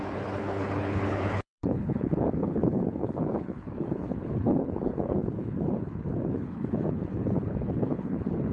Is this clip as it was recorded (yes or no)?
no